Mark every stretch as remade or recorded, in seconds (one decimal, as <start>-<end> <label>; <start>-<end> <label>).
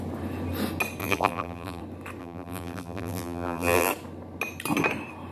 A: 0.0-1.0 recorded; 1.0-1.8 remade; 1.8-2.2 recorded; 2.2-3.9 remade; 3.9-5.3 recorded